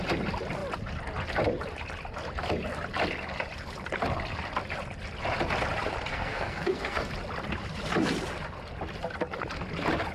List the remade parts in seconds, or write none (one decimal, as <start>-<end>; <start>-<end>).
6.1-7.1